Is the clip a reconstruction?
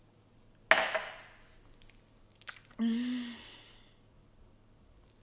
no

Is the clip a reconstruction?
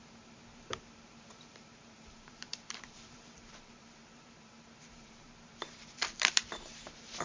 yes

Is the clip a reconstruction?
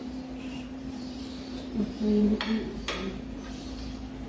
yes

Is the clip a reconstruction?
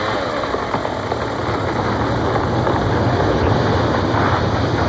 no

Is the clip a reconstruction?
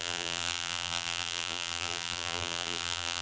yes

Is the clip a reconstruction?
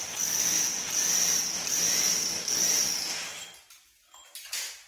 no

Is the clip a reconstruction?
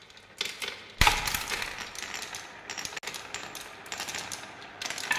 no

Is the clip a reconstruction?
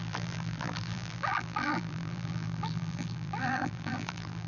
yes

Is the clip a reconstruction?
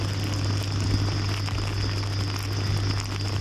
no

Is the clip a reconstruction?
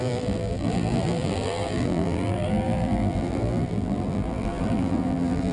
yes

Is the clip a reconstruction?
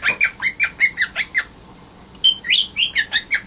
no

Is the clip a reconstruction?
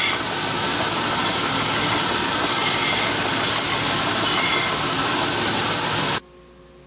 no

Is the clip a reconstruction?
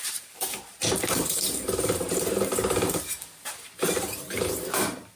yes